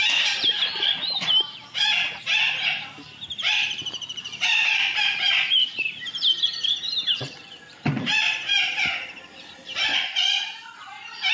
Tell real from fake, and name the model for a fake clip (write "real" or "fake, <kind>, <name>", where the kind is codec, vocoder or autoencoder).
fake, vocoder, BigVGAN v2